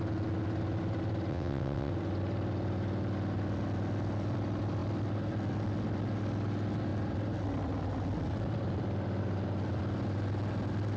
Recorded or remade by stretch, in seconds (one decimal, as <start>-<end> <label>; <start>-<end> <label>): 0.0-1.3 recorded; 1.3-1.9 remade; 1.9-11.0 recorded